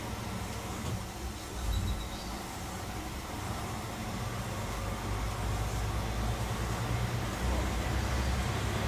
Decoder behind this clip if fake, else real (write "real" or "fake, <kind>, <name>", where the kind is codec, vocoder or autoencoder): real